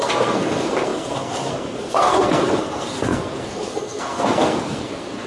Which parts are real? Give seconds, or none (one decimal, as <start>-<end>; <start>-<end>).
none